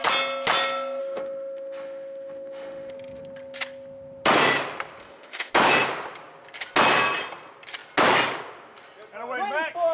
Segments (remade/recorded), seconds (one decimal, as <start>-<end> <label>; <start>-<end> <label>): 0.0-1.0 recorded; 1.0-2.9 remade; 2.9-5.0 recorded; 5.0-5.5 remade; 5.5-9.9 recorded